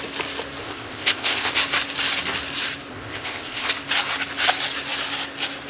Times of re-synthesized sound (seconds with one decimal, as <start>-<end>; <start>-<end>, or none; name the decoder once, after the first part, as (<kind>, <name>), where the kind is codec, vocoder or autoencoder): 0.6-1.5 (codec, ZipCodec); 2.9-3.7